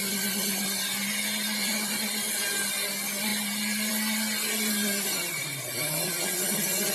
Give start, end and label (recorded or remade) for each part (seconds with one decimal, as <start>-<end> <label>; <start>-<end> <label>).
0.0-6.9 recorded

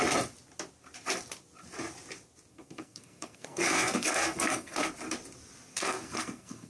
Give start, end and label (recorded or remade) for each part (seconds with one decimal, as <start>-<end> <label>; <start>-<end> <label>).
0.0-2.5 recorded; 2.5-4.9 remade; 4.9-5.7 recorded; 5.7-6.7 remade

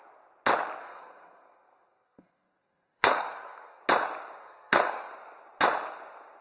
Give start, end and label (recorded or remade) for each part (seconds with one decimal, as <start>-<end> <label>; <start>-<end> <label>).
0.0-0.8 recorded; 0.8-3.8 remade; 3.8-4.4 recorded; 4.4-5.1 remade; 5.1-6.4 recorded

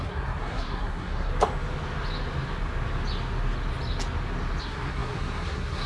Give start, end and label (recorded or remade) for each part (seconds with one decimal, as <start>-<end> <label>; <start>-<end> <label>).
0.0-1.3 remade; 1.3-4.6 recorded; 4.6-5.9 remade

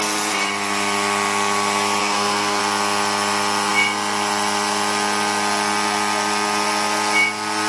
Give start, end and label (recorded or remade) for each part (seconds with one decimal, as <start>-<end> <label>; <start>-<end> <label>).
0.0-2.0 recorded; 2.0-2.6 remade; 2.6-7.7 recorded

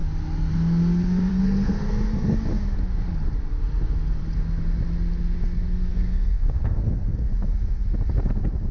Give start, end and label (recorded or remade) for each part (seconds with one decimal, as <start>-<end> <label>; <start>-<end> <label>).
0.0-1.3 recorded; 1.3-1.9 remade; 1.9-5.9 recorded; 5.9-7.3 remade; 7.3-8.7 recorded